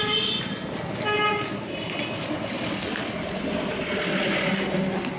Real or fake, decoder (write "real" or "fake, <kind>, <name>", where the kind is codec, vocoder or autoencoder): real